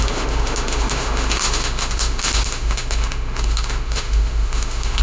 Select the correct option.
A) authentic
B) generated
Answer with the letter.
B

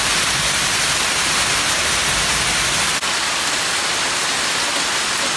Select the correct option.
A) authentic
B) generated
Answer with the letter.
A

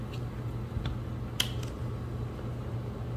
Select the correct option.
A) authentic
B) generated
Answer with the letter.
A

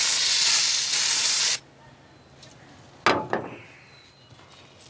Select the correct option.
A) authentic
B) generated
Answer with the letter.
A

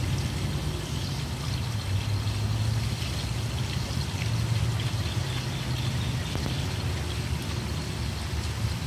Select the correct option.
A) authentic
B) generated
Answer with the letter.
A